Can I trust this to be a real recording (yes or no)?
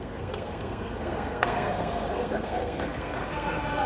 no